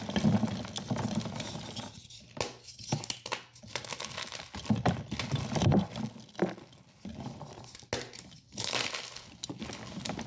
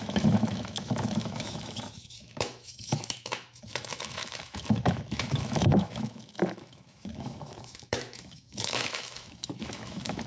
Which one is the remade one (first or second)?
second